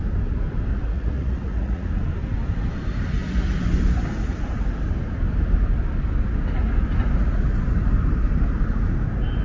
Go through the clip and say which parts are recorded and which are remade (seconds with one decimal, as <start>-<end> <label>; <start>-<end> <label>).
0.0-0.7 recorded; 0.7-1.9 remade; 1.9-9.4 recorded